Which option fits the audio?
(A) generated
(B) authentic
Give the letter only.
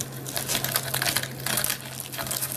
B